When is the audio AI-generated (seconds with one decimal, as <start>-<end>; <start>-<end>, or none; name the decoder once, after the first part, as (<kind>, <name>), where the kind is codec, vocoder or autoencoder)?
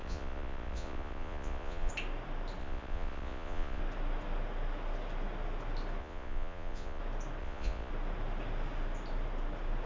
0.0-1.9 (vocoder, Vocos); 2.6-3.8; 6.0-7.0; 7.4-7.9